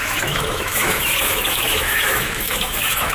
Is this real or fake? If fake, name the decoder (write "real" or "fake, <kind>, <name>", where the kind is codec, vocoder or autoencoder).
fake, autoencoder, DAC-VAE